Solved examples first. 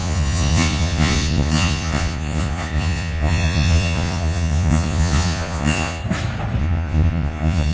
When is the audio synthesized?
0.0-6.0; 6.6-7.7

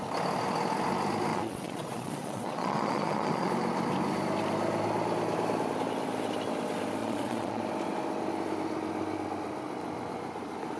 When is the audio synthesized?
1.3-3.5; 7.0-7.6

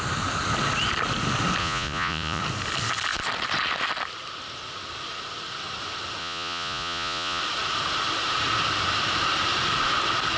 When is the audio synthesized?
1.6-2.4; 6.2-7.4

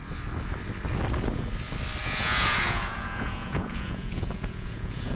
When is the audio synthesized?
2.0-5.2

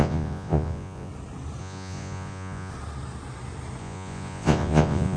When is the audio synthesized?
0.0-1.1; 1.6-2.7; 3.8-5.2

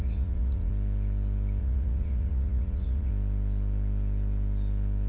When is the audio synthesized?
0.0-0.7; 1.6-3.1